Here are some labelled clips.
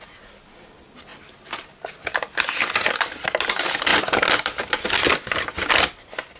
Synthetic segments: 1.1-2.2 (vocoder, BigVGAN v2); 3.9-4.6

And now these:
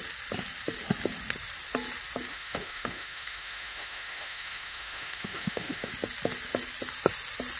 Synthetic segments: 2.3-5.9 (autoencoder, DAC-VAE)